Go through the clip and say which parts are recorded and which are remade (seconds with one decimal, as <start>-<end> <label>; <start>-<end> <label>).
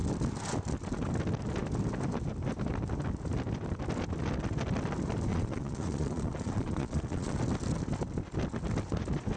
0.0-5.3 recorded; 5.3-7.4 remade; 7.4-9.4 recorded